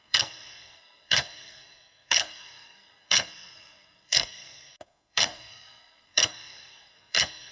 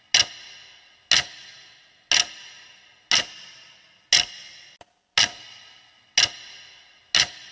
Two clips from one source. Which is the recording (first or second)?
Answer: second